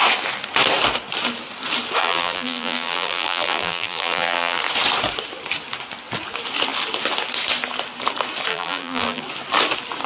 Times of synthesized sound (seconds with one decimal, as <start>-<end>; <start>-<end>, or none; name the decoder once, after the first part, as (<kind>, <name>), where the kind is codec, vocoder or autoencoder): 2.0-4.6 (vocoder, BigVGAN v2); 8.5-9.2